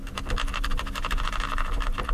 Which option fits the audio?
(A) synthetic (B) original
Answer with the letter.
B